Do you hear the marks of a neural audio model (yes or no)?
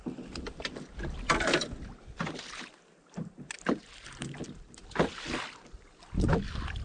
no